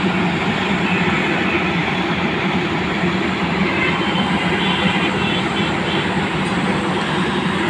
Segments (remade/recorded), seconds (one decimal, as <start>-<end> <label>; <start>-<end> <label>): 0.0-1.8 recorded; 1.8-6.4 remade; 6.4-7.7 recorded